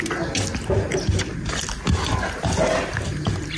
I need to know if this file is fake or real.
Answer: real